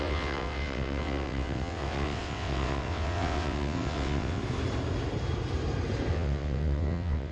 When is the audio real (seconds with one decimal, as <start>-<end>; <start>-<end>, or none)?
4.4-6.1